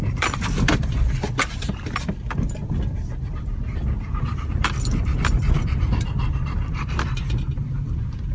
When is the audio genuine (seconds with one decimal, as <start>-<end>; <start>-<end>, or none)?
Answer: none